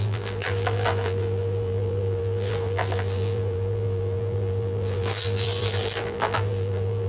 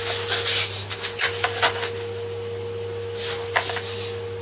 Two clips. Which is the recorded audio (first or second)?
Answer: second